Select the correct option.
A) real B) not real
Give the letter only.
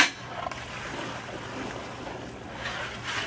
A